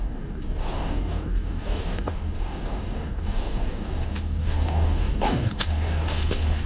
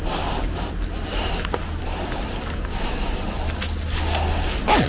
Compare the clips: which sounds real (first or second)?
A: second